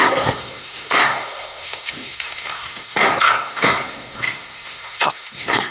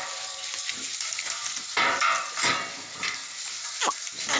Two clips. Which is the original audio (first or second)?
second